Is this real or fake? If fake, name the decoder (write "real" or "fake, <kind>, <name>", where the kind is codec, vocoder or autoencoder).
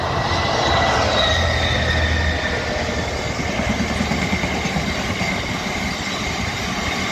real